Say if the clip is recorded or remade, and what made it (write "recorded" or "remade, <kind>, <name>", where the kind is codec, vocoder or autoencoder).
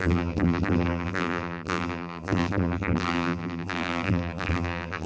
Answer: remade, vocoder, BigVGAN v2